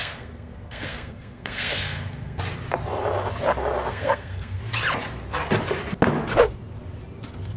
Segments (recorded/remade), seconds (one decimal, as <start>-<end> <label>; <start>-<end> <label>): 0.0-2.4 remade; 2.4-3.9 recorded; 3.9-4.6 remade; 4.6-7.6 recorded